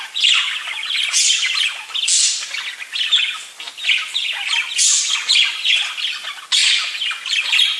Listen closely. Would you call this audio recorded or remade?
recorded